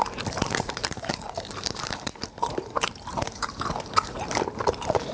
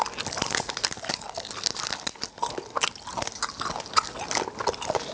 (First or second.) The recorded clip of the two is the second